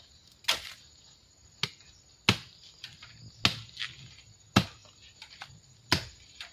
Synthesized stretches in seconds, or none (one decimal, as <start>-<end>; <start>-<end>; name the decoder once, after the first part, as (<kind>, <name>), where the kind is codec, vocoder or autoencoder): none